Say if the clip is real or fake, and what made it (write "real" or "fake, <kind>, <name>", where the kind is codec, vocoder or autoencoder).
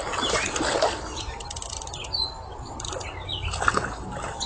real